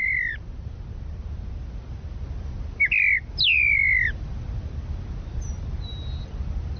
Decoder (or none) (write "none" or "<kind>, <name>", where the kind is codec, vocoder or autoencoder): none